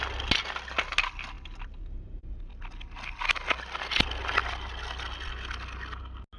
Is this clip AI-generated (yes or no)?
no